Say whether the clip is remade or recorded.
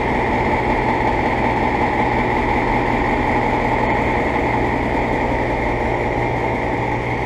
recorded